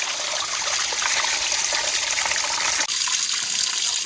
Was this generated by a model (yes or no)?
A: no